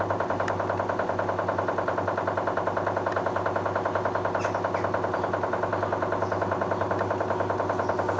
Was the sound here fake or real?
real